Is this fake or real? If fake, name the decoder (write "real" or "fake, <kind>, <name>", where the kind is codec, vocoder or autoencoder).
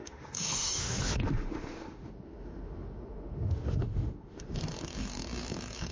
fake, autoencoder, DAC-VAE